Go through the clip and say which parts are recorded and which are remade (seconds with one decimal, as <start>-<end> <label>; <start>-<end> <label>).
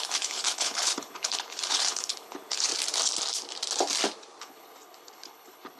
0.0-2.7 remade; 2.7-4.4 recorded; 4.4-5.8 remade